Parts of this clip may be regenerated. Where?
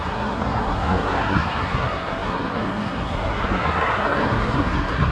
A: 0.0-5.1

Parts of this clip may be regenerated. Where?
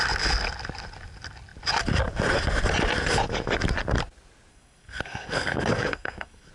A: 4.5-6.5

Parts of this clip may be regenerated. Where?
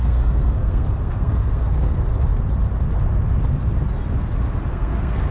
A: 0.0-2.1; 4.7-5.3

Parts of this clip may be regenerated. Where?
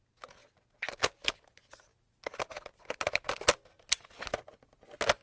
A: none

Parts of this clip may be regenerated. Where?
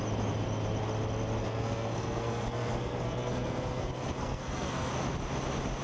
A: 1.4-4.9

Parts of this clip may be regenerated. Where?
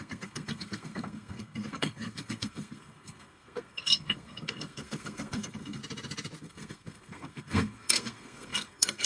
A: 0.0-5.8; 6.4-9.1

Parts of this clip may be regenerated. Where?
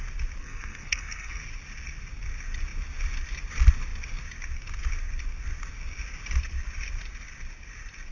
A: 0.4-1.4